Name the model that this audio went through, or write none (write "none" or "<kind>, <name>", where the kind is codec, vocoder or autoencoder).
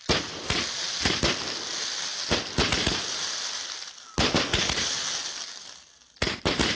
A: none